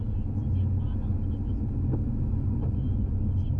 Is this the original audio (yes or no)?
yes